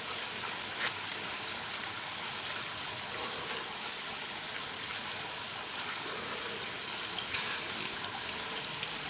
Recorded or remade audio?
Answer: recorded